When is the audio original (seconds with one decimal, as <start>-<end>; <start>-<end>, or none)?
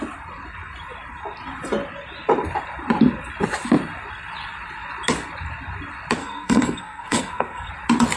0.0-6.2; 7.7-8.2